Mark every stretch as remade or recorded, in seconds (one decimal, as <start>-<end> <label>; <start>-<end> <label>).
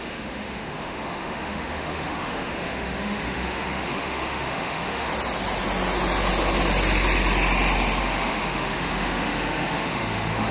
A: 0.0-5.1 remade; 5.1-8.0 recorded; 8.0-10.5 remade